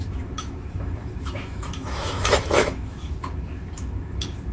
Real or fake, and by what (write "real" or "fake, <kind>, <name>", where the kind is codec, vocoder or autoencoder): fake, autoencoder, DAC-VAE